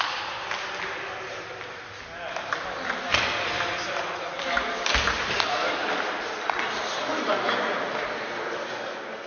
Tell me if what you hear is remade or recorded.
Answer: recorded